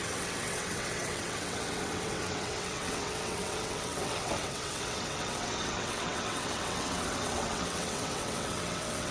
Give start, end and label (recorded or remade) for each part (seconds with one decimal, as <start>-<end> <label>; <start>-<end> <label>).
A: 0.0-9.1 remade